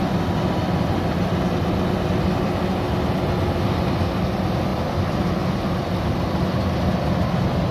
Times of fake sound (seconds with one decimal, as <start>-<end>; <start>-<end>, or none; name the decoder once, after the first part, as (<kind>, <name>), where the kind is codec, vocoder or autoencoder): none